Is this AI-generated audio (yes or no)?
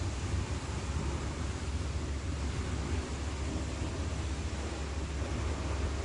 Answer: no